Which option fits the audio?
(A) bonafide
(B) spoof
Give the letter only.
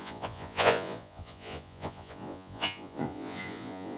B